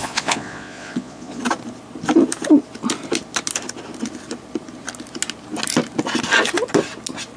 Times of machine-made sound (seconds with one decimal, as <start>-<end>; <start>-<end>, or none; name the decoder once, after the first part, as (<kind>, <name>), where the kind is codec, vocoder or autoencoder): 0.0-1.4 (vocoder, Vocos)